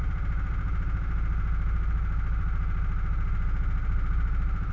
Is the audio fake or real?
real